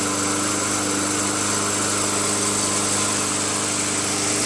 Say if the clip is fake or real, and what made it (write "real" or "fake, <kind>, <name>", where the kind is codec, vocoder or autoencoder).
real